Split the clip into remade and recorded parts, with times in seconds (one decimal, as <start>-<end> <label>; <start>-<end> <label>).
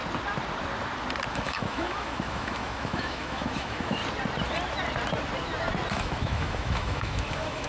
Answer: 0.0-1.3 recorded; 1.3-4.0 remade; 4.0-5.9 recorded; 5.9-7.7 remade